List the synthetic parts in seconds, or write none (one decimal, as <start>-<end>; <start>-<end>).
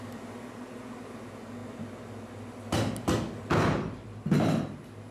none